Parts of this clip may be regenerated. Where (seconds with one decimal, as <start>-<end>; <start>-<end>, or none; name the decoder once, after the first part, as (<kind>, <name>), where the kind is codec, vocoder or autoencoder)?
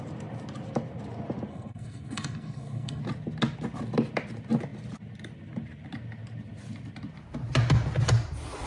1.5-3.0 (codec, SNAC)